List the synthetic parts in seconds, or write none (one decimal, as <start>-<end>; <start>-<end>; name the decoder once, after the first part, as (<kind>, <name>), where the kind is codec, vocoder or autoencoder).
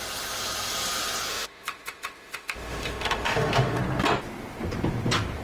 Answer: 1.3-3.8 (autoencoder, DAC-VAE)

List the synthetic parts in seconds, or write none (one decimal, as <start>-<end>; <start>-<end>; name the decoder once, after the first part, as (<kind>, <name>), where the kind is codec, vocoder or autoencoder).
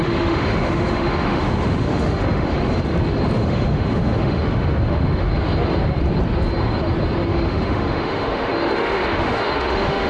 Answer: 0.0-2.7 (autoencoder, DAC-VAE); 3.4-5.3; 7.3-10.1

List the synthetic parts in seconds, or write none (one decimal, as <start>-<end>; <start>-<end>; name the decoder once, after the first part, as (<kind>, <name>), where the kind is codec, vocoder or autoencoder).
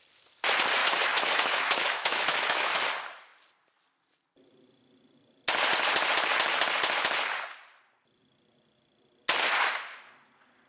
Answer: 0.8-2.8 (autoencoder, DAC-VAE)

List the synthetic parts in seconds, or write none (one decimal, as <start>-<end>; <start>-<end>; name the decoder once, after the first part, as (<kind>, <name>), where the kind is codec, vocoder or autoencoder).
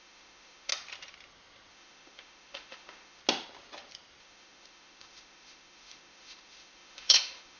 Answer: 0.0-0.7 (autoencoder, DAC-VAE); 1.7-3.2; 4.2-7.6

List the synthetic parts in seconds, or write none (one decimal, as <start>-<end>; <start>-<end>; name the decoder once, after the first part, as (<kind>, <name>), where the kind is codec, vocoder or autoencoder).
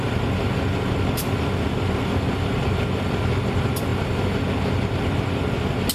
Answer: none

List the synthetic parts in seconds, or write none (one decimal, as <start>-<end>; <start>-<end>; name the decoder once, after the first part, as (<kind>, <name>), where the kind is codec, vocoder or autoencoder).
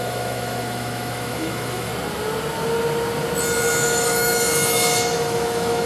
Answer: 0.0-1.9 (autoencoder, DAC-VAE); 3.8-5.9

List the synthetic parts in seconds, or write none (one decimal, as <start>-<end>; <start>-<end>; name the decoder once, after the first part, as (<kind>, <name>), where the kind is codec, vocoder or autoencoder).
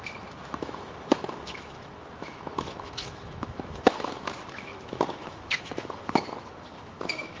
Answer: 0.0-7.4 (autoencoder, DAC-VAE)